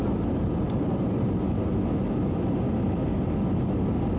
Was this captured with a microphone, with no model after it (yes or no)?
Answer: yes